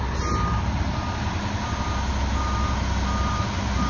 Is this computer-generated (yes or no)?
no